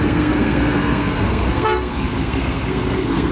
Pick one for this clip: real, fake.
fake